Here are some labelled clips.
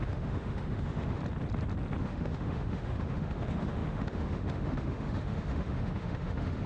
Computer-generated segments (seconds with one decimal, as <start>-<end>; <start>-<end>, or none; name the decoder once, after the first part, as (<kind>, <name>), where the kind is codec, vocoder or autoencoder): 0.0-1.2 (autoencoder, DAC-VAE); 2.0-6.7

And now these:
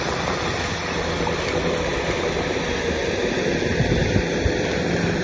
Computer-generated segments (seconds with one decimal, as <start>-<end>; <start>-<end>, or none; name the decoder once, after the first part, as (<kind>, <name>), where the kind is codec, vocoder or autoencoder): 1.9-5.2 (vocoder, BigVGAN v2)

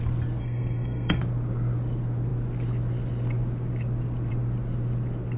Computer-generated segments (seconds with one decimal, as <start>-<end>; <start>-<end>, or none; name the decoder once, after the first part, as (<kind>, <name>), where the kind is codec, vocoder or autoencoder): 0.4-1.2 (codec, SNAC)